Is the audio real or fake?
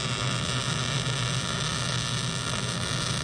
real